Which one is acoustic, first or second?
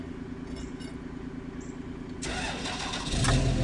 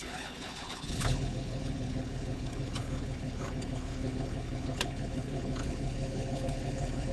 first